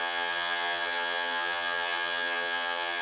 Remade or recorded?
remade